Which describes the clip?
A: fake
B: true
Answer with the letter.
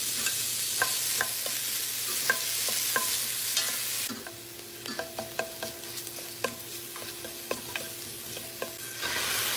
B